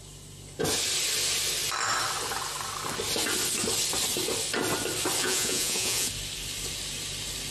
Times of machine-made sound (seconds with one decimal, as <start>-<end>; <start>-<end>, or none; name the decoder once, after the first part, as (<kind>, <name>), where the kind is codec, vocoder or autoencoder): 5.2-6.1 (vocoder, Vocos)